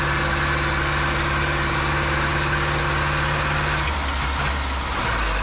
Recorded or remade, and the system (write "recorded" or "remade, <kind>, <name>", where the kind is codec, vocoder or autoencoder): recorded